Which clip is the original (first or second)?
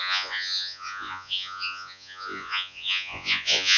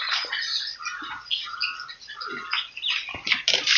second